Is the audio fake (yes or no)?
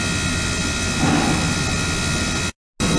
no